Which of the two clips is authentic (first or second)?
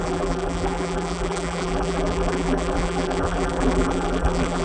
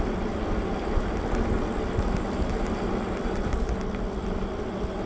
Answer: second